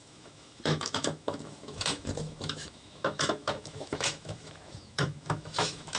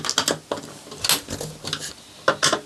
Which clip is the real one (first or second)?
second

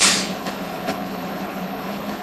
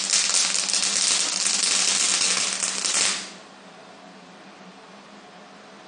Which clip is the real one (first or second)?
second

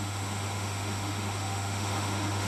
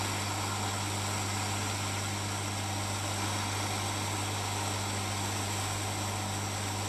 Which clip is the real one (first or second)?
second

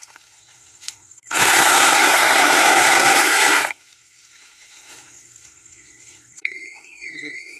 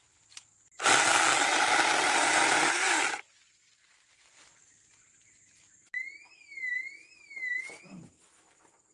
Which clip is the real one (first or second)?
second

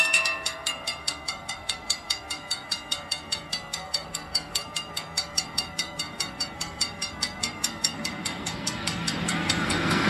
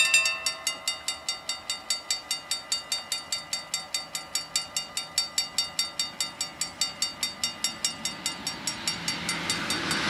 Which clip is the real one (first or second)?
second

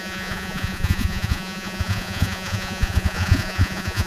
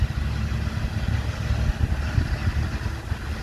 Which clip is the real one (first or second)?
second